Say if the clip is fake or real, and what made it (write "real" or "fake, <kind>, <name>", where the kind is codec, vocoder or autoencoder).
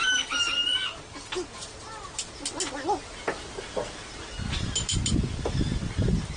real